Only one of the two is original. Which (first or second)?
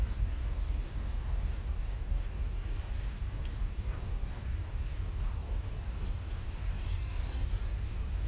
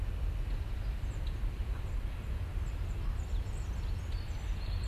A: second